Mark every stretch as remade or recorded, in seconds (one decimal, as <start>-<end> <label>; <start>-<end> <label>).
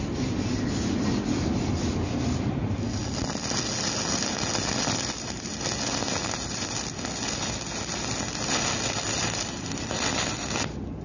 0.0-11.0 recorded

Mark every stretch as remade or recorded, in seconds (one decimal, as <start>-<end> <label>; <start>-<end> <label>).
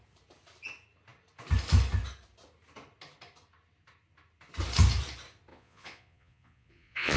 0.0-5.5 recorded; 5.5-7.2 remade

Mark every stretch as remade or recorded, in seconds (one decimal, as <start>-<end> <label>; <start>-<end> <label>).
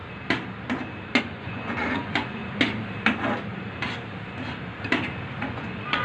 0.0-1.2 recorded; 1.2-2.4 remade; 2.4-5.4 recorded; 5.4-6.0 remade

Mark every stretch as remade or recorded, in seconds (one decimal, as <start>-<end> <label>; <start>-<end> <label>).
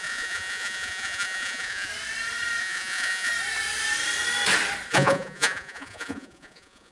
0.0-1.9 remade; 1.9-2.6 recorded; 2.6-3.3 remade; 3.3-4.9 recorded; 4.9-6.9 remade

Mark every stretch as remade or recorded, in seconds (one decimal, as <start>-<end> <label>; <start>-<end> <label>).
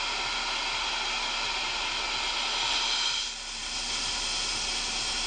0.0-5.3 recorded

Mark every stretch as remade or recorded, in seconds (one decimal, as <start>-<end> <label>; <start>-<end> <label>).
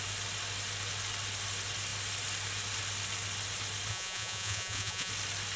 0.0-3.9 recorded; 3.9-5.1 remade; 5.1-5.6 recorded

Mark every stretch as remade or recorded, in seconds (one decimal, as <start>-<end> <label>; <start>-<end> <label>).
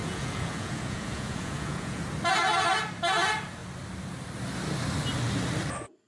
0.0-2.0 remade; 2.0-6.1 recorded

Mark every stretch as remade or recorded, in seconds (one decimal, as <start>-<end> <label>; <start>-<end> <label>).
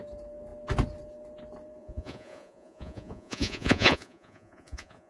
0.0-1.8 recorded; 1.8-5.1 remade